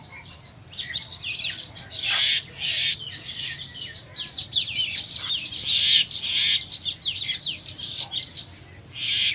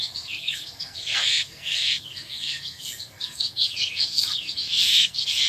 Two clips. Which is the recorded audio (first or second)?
first